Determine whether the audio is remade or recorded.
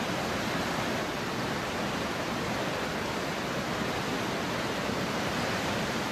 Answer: recorded